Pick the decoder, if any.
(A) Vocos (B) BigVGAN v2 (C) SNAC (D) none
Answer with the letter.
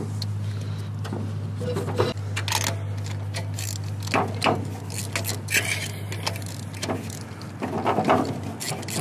D